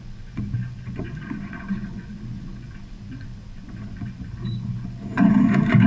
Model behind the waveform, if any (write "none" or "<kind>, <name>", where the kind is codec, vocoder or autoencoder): vocoder, Vocos